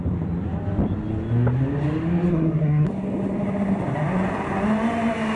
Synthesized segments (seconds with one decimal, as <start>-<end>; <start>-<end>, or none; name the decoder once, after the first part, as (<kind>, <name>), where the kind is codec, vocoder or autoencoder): 2.3-2.9 (codec, SNAC)